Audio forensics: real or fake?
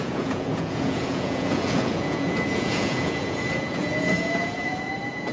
fake